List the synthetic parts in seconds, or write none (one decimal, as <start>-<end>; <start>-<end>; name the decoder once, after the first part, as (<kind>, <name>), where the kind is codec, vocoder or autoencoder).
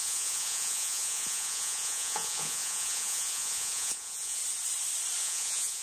0.0-4.4 (vocoder, Vocos); 5.2-5.8